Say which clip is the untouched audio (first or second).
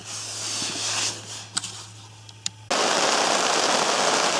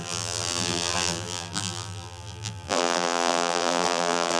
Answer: first